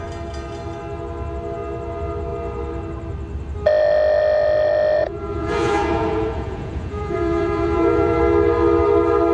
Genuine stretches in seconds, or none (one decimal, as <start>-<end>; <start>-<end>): 0.0-5.0; 8.2-9.3